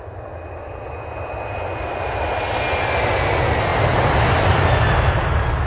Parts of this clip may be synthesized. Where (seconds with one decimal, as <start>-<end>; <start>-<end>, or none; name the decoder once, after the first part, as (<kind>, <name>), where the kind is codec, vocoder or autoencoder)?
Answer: none